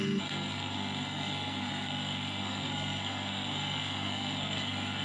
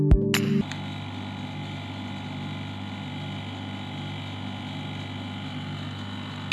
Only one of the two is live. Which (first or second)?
second